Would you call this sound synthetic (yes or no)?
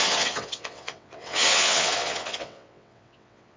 yes